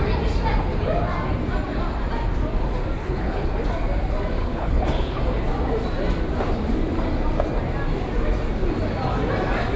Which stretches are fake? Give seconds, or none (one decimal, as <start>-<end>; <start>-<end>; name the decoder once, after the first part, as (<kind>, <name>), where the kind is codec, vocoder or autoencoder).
3.0-3.5 (codec, HILCodec); 4.4-5.2